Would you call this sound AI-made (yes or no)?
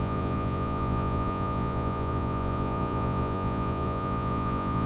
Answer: yes